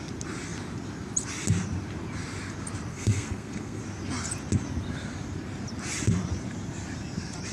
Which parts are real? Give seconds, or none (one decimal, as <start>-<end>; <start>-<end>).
0.0-2.9; 3.8-7.5